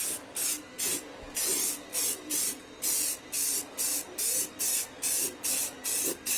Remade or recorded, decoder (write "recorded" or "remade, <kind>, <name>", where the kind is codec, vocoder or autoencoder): recorded